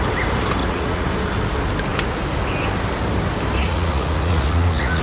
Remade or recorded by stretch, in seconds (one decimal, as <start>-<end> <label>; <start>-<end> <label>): 0.0-0.6 recorded; 0.6-1.1 remade; 1.1-3.6 recorded; 3.6-5.0 remade

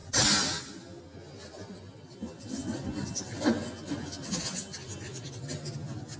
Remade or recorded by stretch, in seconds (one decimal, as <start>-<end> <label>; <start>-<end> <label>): 0.0-6.2 recorded